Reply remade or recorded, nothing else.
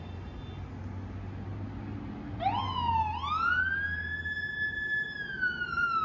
recorded